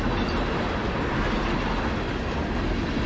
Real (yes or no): yes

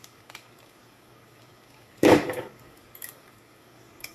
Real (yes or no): no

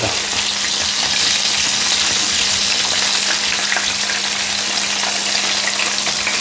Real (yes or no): yes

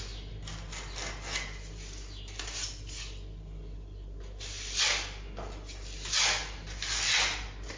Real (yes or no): yes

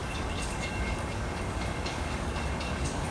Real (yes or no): no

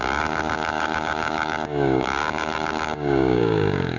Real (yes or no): no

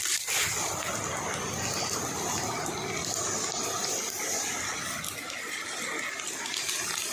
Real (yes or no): yes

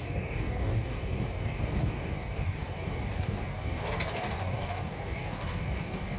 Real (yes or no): no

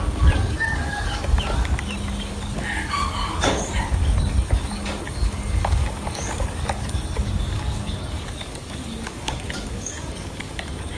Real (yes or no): no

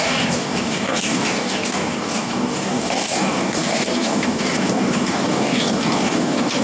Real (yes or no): no